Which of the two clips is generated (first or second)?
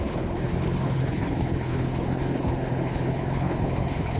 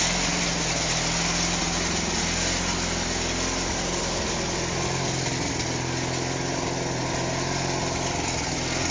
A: first